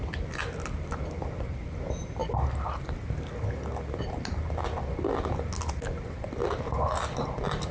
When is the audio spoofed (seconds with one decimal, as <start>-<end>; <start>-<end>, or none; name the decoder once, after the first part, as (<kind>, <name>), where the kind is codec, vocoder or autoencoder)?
none